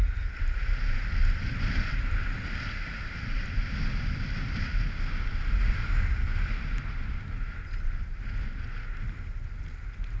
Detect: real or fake real